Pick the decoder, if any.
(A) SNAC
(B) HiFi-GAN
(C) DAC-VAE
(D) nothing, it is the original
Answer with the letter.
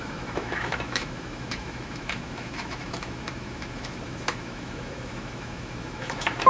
C